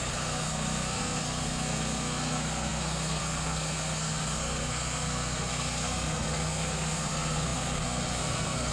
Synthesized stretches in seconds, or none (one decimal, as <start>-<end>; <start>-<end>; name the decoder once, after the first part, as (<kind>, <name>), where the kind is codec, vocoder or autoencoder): 0.0-8.7 (codec, SNAC)